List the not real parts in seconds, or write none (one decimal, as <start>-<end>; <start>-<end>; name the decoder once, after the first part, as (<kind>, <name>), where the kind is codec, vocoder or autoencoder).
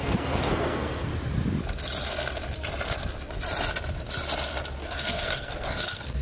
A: 0.0-1.1 (codec, SNAC); 4.8-6.2